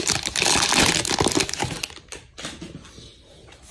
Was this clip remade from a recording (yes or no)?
no